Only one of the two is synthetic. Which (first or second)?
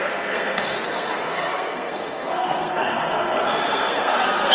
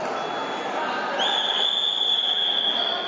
first